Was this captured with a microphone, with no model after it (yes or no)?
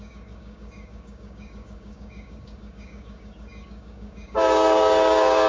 no